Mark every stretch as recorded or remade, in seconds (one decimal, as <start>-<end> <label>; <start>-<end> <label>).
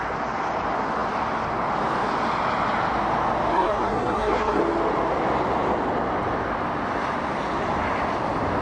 0.0-3.5 recorded; 3.5-4.6 remade; 4.6-8.6 recorded